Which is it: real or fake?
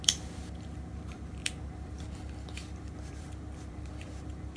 fake